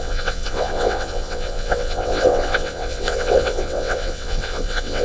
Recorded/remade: remade